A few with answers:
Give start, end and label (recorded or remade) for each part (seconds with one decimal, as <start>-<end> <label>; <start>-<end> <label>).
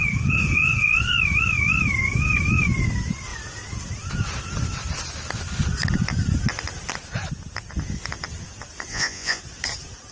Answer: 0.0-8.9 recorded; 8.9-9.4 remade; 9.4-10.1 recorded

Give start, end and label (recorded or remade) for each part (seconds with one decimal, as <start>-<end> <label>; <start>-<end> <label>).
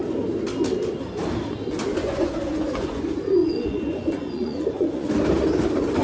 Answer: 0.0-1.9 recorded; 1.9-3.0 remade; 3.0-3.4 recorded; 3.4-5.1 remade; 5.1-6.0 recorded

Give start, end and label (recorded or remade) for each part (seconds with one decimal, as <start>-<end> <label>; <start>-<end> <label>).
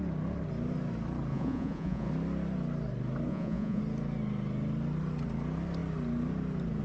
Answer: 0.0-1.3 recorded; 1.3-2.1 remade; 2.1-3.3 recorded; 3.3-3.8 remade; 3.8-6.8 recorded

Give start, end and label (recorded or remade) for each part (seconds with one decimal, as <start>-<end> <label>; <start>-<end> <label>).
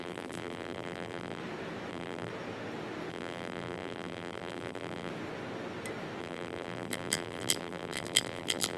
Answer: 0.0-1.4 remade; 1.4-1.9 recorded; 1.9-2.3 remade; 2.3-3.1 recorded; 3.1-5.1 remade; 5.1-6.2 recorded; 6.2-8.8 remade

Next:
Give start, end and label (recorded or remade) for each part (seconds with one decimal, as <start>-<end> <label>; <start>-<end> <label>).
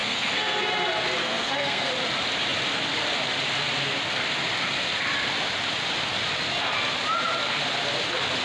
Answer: 0.0-0.6 remade; 0.6-1.2 recorded; 1.2-1.9 remade; 1.9-8.4 recorded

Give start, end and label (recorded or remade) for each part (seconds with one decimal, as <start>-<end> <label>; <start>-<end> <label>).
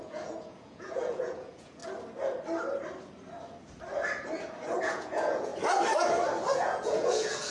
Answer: 0.0-1.8 remade; 1.8-4.8 recorded; 4.8-5.5 remade; 5.5-6.5 recorded; 6.5-7.5 remade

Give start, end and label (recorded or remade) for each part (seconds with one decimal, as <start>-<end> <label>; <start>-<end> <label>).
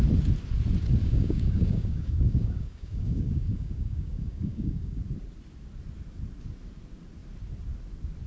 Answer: 0.0-1.0 recorded; 1.0-5.0 remade; 5.0-8.3 recorded